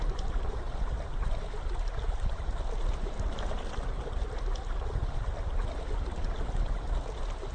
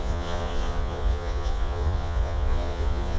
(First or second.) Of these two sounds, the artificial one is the second